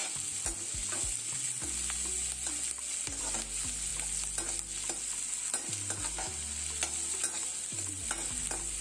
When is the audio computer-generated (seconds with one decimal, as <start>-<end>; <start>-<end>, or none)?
none